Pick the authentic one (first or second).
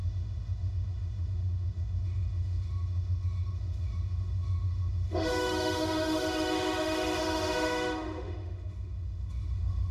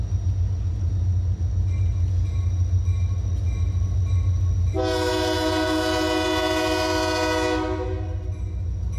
second